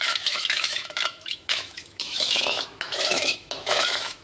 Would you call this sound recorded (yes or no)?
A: no